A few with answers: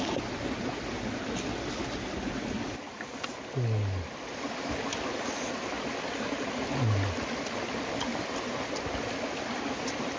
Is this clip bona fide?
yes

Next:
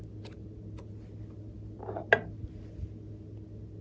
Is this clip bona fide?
yes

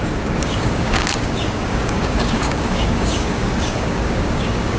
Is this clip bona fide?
no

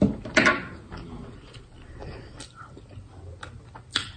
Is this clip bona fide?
yes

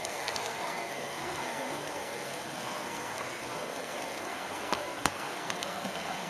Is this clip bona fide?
no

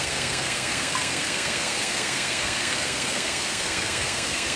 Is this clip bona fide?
no